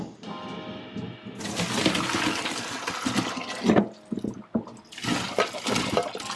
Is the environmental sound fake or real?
real